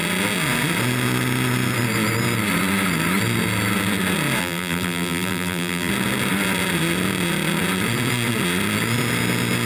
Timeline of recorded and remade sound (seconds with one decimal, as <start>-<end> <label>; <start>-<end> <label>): 0.0-4.4 recorded; 4.4-5.9 remade; 5.9-9.7 recorded